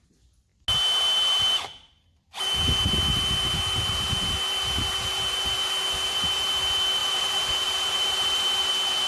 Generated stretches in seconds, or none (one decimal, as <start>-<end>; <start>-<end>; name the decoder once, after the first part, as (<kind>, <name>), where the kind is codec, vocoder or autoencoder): 7.0-8.7 (vocoder, BigVGAN v2)